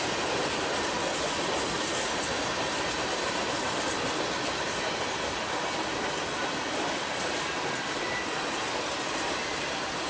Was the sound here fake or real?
real